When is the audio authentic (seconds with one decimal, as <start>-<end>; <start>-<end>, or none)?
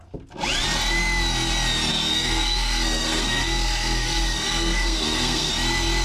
0.0-1.9; 5.5-6.0